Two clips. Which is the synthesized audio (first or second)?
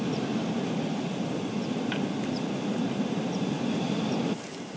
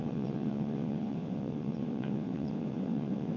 second